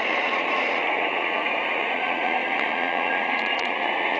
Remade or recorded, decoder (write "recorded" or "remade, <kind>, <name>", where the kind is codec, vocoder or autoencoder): remade, vocoder, Vocos